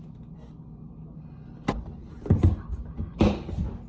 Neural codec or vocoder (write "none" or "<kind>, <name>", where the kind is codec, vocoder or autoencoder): none